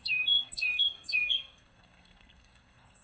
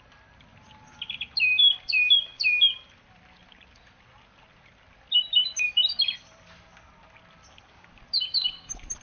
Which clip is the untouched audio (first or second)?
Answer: second